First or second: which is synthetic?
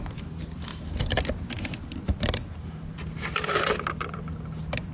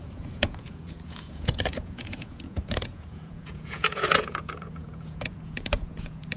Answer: second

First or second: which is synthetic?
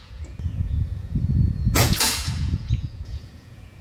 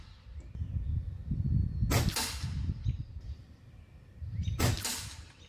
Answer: first